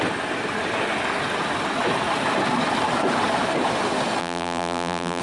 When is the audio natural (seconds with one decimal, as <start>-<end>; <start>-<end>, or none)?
0.0-4.2